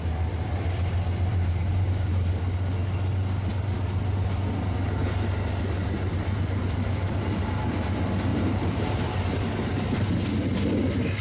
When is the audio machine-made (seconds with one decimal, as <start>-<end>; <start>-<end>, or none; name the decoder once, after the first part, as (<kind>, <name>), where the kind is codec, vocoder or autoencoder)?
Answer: 1.3-2.4 (vocoder, BigVGAN v2); 8.3-9.2